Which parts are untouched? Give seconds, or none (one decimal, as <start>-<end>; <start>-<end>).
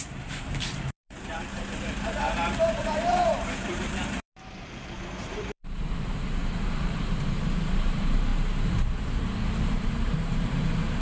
8.3-9.6